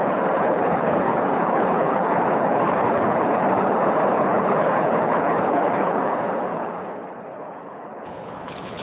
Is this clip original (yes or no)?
no